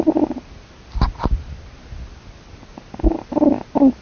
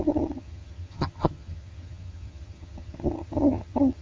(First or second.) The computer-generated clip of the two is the second